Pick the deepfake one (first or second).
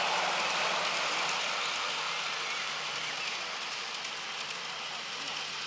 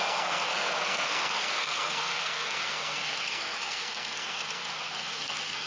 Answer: second